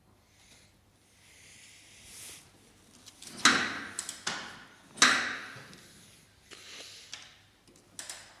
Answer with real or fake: real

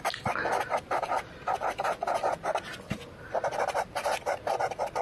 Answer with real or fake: real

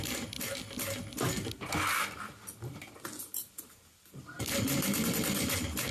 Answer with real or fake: real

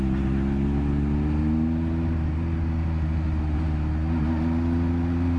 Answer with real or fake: real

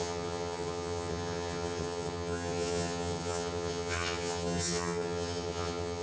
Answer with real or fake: fake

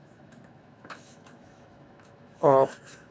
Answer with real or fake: fake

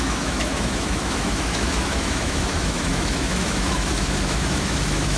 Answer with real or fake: fake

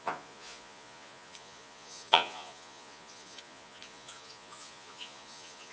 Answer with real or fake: fake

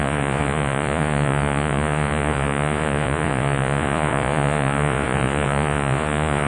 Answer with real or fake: fake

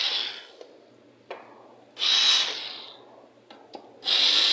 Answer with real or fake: real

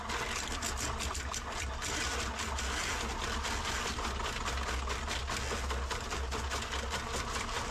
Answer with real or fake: real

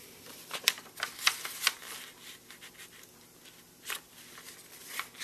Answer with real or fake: real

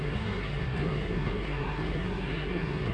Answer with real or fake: fake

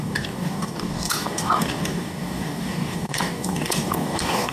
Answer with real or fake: fake